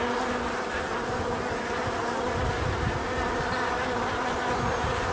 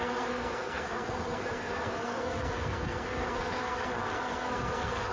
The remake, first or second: second